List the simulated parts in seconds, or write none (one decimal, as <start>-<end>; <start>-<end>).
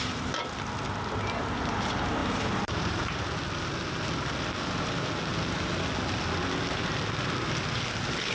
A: 2.2-3.2